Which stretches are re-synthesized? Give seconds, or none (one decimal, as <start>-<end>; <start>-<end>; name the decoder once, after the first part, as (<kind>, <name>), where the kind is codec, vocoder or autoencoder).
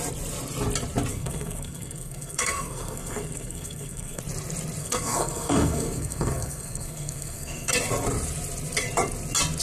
1.1-4.2 (codec, SNAC); 4.8-7.7